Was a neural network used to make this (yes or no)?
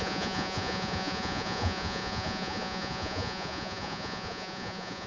yes